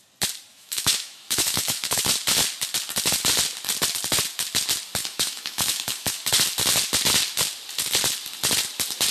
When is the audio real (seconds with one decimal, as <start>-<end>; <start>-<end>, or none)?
0.0-0.5; 2.0-5.0; 6.3-9.1

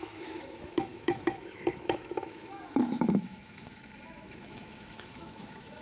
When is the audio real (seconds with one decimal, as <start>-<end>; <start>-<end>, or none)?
none